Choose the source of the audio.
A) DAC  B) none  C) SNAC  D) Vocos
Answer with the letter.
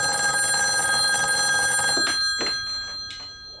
B